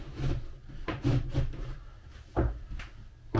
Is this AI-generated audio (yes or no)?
no